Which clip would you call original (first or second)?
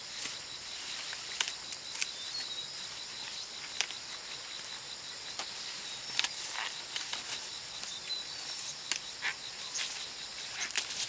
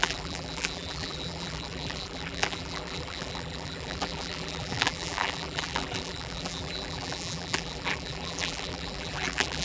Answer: first